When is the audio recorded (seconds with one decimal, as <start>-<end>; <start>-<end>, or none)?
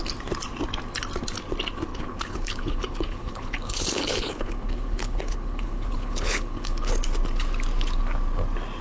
0.0-1.9; 6.9-8.8